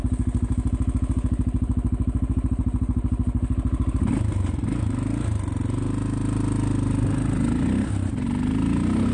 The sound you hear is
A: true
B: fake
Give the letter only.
A